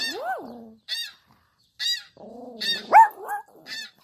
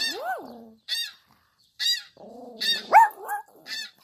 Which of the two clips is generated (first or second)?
second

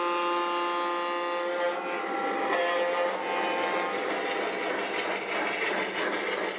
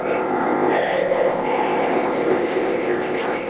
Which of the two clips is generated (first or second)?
second